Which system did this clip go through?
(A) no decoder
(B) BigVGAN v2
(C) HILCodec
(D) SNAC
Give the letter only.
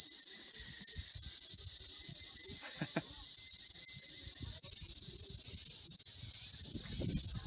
A